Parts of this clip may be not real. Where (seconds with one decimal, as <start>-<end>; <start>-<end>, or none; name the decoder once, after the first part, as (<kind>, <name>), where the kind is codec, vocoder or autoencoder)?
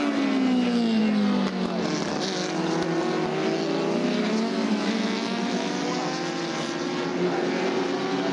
4.7-5.8 (autoencoder, DAC-VAE)